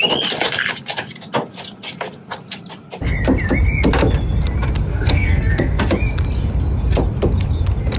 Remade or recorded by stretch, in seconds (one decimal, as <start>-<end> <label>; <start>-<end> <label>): 0.0-4.9 recorded; 4.9-5.8 remade; 5.8-8.0 recorded

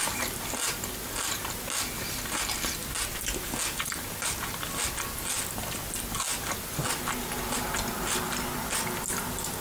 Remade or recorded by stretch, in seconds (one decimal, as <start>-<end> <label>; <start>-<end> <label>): 0.0-9.6 recorded